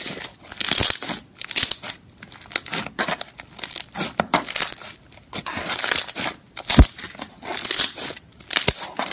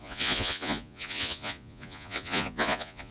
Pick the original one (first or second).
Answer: first